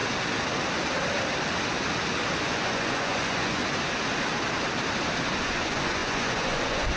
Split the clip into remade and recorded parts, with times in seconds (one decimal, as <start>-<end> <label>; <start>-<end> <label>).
0.0-2.4 recorded; 2.4-3.6 remade; 3.6-5.4 recorded; 5.4-7.0 remade

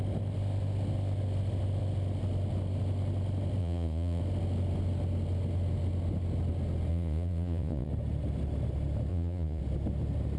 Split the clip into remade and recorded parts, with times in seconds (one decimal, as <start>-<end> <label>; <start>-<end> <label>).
0.0-3.6 recorded; 3.6-4.2 remade; 4.2-6.9 recorded; 6.9-7.9 remade; 7.9-9.1 recorded; 9.1-9.6 remade; 9.6-10.4 recorded

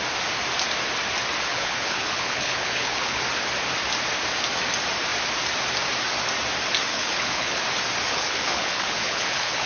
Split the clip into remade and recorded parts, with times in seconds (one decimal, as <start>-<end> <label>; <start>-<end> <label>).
0.0-1.5 recorded; 1.5-3.2 remade; 3.2-6.9 recorded; 6.9-7.6 remade; 7.6-8.1 recorded; 8.1-9.7 remade

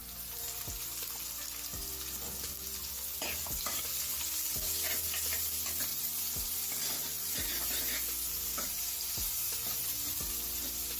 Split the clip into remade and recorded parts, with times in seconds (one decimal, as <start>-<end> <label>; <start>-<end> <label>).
0.0-0.6 remade; 0.6-3.2 recorded; 3.2-3.8 remade; 3.8-5.9 recorded; 5.9-6.7 remade; 6.7-8.5 recorded; 8.5-10.0 remade; 10.0-11.0 recorded

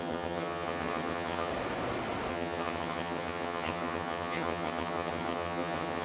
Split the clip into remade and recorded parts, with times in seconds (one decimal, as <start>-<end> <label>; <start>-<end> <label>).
0.0-1.5 remade; 1.5-2.3 recorded; 2.3-6.0 remade

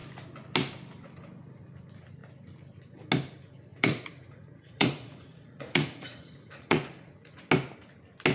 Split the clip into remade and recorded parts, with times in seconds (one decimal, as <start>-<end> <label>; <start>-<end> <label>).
0.0-3.7 recorded; 3.7-7.4 remade; 7.4-8.3 recorded